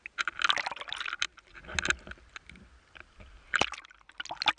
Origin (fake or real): real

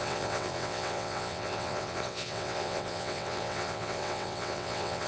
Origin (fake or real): fake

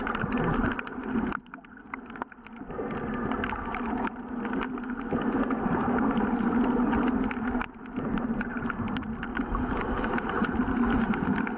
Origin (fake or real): real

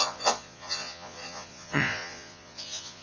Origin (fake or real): fake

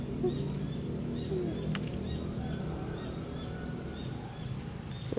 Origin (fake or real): real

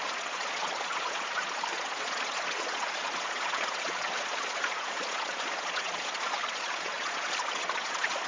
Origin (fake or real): fake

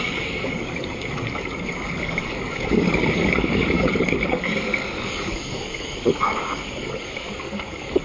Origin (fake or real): fake